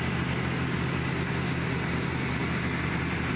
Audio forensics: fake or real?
real